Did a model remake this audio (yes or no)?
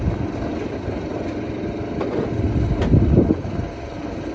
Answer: no